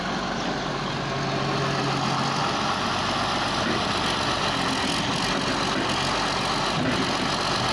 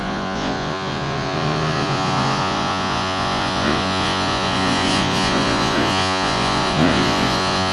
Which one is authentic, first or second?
first